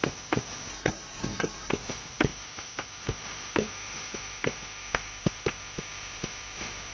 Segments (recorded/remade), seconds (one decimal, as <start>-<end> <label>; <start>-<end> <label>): 0.0-0.7 recorded; 0.7-1.7 remade; 1.7-6.9 recorded